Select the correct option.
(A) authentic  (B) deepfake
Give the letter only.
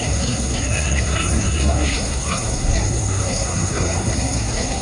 B